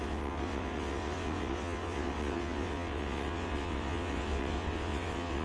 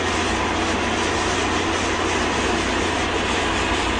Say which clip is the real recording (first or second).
second